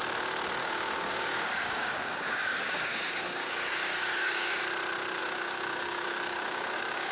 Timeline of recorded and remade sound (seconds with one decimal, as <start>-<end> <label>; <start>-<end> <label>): 0.0-0.6 recorded; 0.6-4.6 remade; 4.6-5.2 recorded; 5.2-7.1 remade